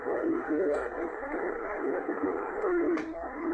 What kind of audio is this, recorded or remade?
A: remade